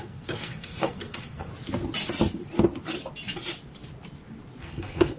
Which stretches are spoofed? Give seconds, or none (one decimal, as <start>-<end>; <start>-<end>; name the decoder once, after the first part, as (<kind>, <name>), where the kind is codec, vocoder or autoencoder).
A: 0.0-1.5 (codec, SNAC); 4.6-5.2